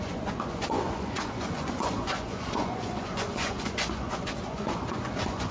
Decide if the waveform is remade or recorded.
remade